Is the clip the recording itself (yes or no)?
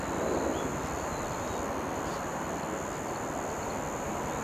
yes